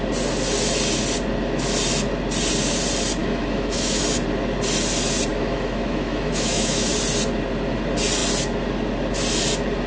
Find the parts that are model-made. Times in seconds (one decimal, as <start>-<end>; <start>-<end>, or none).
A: 3.2-4.0; 5.3-6.9